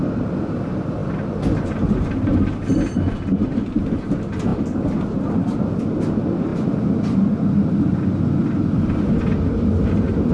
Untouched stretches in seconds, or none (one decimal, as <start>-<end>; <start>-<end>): 0.0-10.3

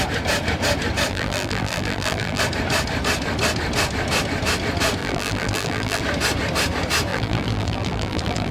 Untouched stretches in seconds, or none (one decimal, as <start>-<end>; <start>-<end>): 0.0-1.1; 2.4-5.0; 6.0-7.1

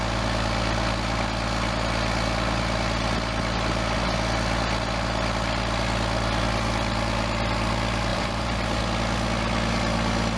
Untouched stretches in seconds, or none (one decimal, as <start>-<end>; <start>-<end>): 0.0-8.1; 8.8-10.4

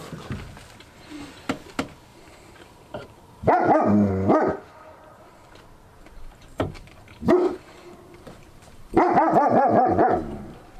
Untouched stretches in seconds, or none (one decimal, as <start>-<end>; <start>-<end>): 0.0-2.1; 4.1-5.9